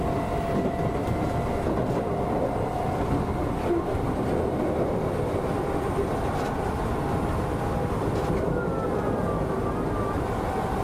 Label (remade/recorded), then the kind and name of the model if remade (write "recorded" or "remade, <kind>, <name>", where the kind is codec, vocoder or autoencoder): recorded